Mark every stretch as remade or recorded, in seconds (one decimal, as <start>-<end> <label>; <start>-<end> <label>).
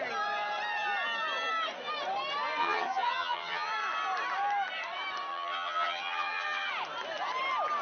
0.0-2.6 recorded; 2.6-3.7 remade; 3.7-5.3 recorded; 5.3-6.7 remade; 6.7-7.8 recorded